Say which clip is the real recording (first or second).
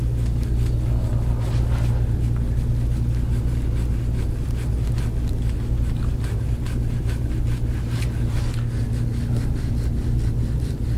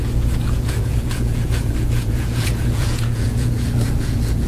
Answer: first